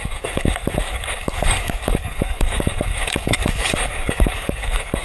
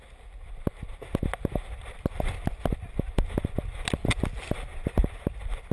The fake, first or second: first